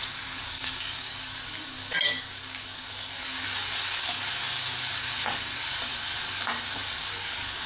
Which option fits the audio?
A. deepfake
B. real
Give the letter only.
A